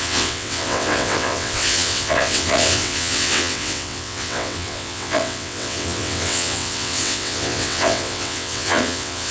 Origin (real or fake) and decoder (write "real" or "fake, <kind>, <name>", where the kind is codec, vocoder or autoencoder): fake, vocoder, WaveNeXt